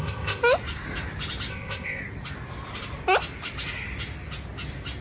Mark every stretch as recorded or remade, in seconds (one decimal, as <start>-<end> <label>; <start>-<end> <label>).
0.0-0.4 remade; 0.4-1.5 recorded; 1.5-2.0 remade; 2.0-5.0 recorded